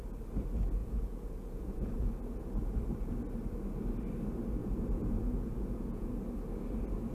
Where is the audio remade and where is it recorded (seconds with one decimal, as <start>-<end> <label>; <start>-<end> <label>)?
0.0-0.8 recorded; 0.8-2.1 remade; 2.1-4.6 recorded; 4.6-6.1 remade; 6.1-7.1 recorded